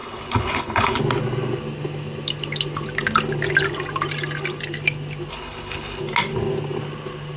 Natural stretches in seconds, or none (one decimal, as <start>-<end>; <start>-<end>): 1.0-5.3; 6.0-7.4